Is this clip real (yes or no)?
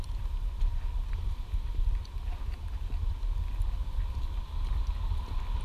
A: yes